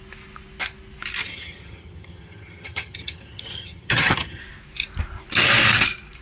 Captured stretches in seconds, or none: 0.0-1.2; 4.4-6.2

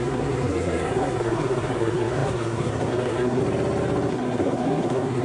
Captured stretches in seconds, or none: 3.4-4.1

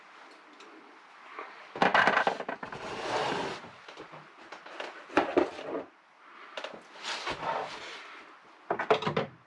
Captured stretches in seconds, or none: 0.0-9.5

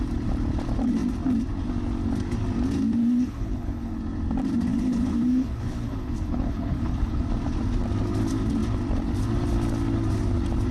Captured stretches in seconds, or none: 0.0-3.0; 4.0-4.7; 7.2-10.7

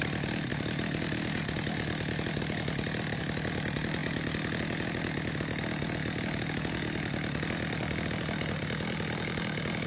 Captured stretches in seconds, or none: 0.0-6.0; 6.5-9.9

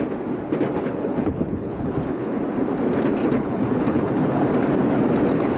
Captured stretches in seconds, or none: 0.0-0.8; 2.4-3.2; 4.4-5.6

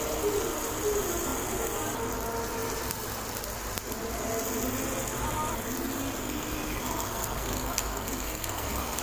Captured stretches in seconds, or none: 0.0-6.2

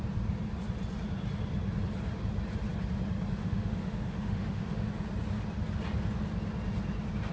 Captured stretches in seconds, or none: 0.0-3.4; 4.9-7.3